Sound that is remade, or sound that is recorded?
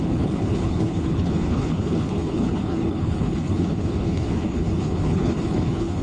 remade